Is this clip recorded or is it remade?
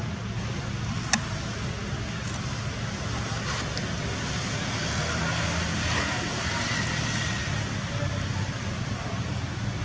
recorded